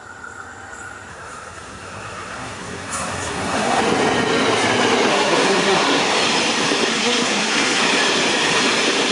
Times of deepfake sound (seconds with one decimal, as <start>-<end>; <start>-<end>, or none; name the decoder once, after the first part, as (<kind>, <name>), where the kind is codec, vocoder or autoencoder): 1.1-3.8 (codec, SNAC); 5.1-6.0; 6.9-7.8